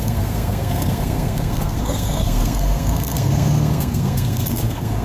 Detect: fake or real fake